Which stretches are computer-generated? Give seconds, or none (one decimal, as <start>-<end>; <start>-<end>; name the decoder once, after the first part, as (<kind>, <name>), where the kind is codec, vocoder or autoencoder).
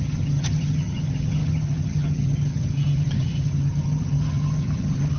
0.0-5.2 (vocoder, HiFi-GAN)